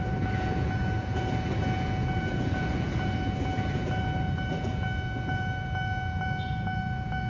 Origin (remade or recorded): remade